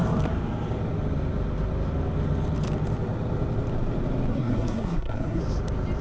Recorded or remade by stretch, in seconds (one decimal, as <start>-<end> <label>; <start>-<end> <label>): 0.0-4.3 recorded; 4.3-5.4 remade; 5.4-6.0 recorded